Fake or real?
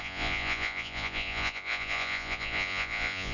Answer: fake